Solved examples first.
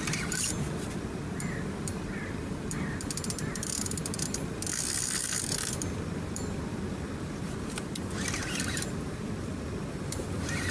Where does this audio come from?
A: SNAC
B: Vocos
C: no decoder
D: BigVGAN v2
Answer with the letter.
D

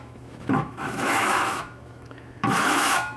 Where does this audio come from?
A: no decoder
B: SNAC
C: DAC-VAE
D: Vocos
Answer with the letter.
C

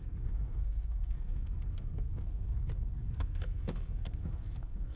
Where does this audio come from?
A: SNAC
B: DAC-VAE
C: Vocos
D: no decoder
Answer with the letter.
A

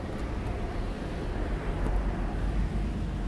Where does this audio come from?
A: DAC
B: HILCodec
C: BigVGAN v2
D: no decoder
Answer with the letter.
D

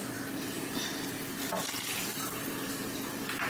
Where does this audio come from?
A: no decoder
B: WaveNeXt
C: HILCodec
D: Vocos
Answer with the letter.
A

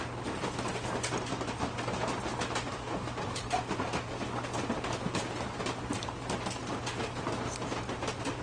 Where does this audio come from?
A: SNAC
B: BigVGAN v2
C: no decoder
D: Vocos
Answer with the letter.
B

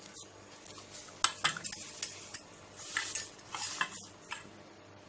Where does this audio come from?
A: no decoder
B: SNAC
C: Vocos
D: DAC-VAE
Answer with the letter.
A